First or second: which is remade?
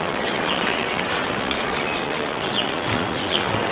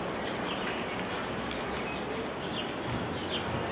first